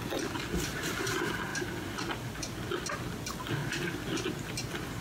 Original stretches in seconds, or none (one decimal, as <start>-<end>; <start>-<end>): 0.0-5.0